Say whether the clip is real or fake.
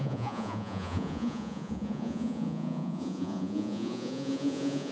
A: fake